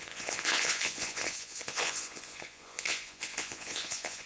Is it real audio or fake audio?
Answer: fake